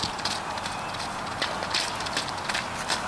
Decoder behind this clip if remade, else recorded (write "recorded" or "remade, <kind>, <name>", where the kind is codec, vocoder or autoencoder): recorded